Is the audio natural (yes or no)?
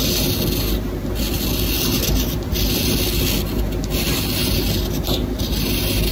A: yes